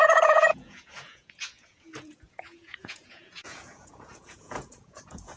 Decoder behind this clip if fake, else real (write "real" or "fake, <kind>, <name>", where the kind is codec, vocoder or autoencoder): fake, vocoder, Vocos